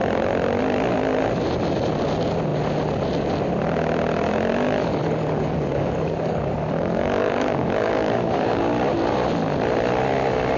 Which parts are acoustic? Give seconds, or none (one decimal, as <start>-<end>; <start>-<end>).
0.0-5.0; 8.6-10.6